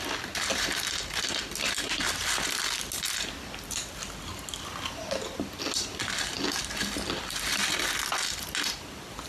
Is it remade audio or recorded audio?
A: recorded